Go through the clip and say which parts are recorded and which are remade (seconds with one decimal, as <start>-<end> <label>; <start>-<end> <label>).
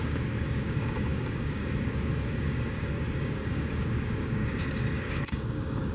0.0-5.9 remade